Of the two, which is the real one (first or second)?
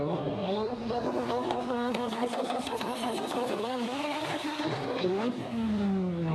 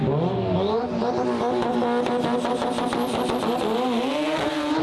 second